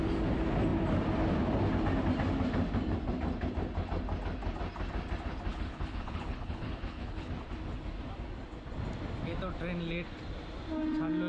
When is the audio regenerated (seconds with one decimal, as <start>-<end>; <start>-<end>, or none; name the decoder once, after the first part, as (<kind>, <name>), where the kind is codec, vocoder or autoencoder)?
5.5-7.3 (codec, HILCodec)